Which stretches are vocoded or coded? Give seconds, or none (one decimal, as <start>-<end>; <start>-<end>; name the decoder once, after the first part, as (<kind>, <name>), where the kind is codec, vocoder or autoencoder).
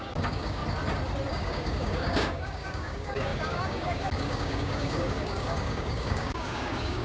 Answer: 0.0-0.6 (codec, DAC); 1.3-7.0